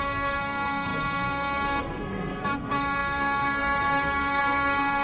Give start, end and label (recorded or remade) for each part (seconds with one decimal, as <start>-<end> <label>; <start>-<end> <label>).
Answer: 0.0-5.0 remade